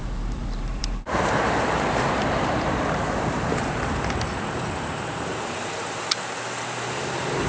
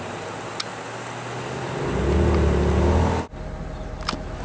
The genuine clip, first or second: second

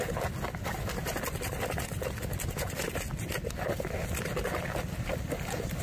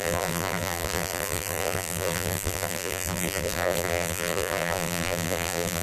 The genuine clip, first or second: first